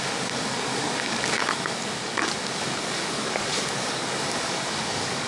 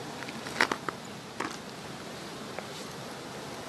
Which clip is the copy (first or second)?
first